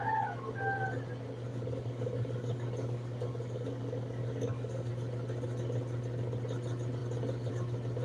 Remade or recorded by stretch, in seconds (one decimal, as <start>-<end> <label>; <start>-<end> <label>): 0.0-1.5 recorded; 1.5-4.9 remade; 4.9-8.0 recorded